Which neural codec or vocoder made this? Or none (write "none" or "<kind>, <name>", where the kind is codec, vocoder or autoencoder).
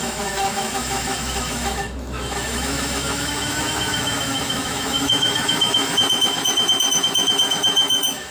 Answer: autoencoder, DAC-VAE